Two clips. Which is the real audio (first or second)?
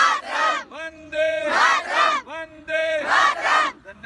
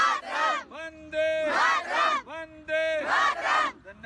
second